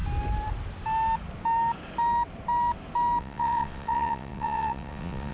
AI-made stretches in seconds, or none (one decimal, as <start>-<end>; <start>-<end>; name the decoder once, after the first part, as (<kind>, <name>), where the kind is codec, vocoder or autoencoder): 3.2-5.3 (vocoder, WaveNeXt)